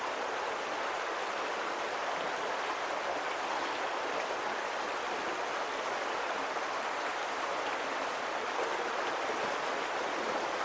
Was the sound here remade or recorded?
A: recorded